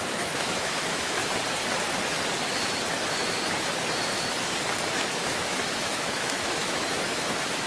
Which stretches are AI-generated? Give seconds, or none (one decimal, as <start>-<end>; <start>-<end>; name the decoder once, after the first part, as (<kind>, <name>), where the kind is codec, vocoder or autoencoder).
0.0-1.2 (autoencoder, DAC-VAE); 4.9-7.7